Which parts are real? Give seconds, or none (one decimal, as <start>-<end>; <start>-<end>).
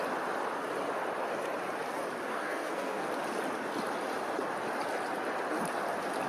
0.0-2.3; 3.1-6.3